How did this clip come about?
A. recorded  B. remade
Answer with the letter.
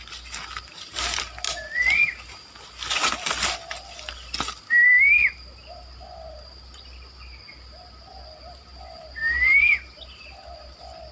A